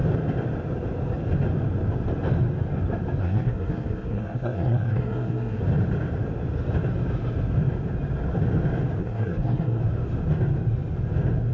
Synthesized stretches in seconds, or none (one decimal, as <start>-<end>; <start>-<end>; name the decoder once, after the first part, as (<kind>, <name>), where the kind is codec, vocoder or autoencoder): 3.2-5.6 (codec, SNAC); 9.0-9.8